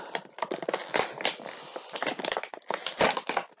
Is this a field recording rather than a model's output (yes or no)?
yes